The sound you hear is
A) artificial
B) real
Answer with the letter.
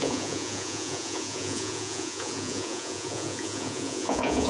A